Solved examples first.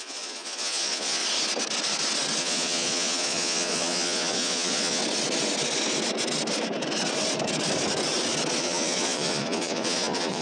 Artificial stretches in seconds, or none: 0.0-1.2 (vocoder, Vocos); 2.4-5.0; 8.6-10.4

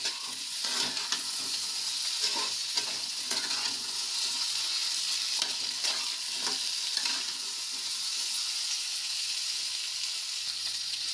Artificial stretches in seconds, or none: 0.0-4.8 (vocoder, Vocos); 7.4-9.6; 10.6-11.1

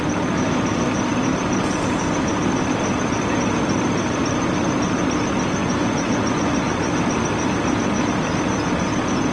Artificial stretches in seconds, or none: 5.6-6.9 (vocoder, Vocos)

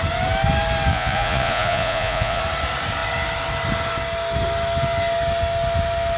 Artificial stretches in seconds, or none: 0.9-2.4 (vocoder, Vocos)

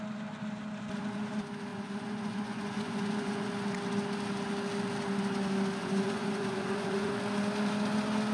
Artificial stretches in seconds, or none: 1.7-3.5 (vocoder, Vocos); 5.8-7.1

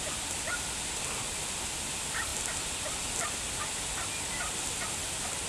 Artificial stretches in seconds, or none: none

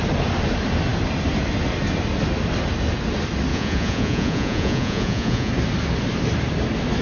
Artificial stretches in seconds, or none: 3.5-5.5 (vocoder, Vocos)

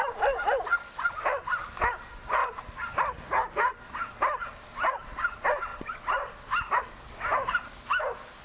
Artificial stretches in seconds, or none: none